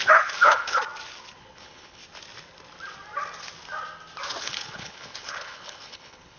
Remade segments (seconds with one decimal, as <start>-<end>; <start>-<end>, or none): 0.0-0.8; 1.4-2.0; 4.4-6.4